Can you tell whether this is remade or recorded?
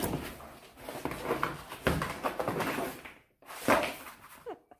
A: recorded